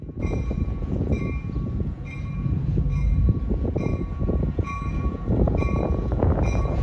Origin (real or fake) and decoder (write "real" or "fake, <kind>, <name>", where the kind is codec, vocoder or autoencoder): fake, vocoder, Vocos